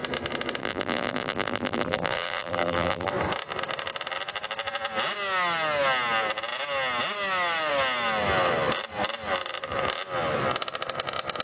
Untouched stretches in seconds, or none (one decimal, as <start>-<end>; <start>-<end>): 0.0-0.6; 3.1-11.4